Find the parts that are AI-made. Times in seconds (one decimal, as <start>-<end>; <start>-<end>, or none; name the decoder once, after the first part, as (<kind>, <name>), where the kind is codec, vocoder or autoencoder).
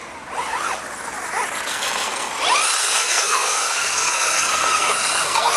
1.7-2.3 (codec, SNAC); 2.8-5.6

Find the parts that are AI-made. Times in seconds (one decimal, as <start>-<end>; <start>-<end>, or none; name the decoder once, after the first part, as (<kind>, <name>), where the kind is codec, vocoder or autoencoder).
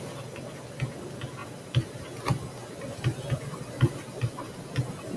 none